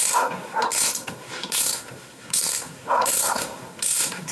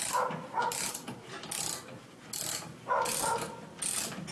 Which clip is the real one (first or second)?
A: second